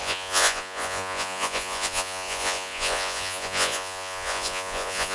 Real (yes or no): no